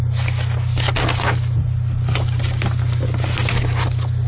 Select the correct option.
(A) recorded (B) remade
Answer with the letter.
A